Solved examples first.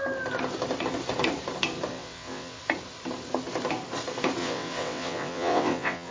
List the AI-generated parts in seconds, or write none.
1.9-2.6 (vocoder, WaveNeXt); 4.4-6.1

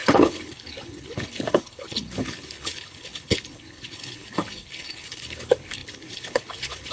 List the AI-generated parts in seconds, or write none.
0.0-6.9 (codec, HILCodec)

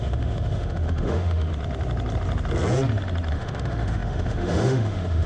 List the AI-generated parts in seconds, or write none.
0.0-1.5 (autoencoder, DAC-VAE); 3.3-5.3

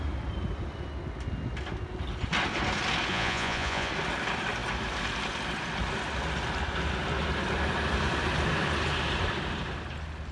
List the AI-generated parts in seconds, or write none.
3.1-3.9 (vocoder, Vocos)

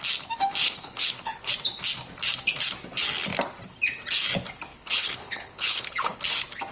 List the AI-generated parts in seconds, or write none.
0.6-1.5 (codec, HILCodec); 4.7-6.2